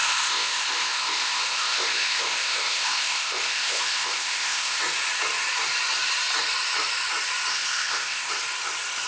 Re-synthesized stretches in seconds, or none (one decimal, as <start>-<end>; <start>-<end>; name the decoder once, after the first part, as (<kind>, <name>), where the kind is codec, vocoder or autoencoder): 0.0-4.8 (codec, ZipCodec); 7.5-8.3